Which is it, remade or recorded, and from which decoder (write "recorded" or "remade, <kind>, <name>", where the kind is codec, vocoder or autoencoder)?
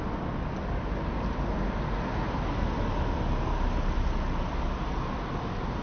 recorded